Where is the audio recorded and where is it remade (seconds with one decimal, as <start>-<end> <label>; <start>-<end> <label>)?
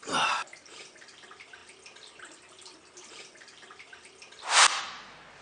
0.0-5.4 recorded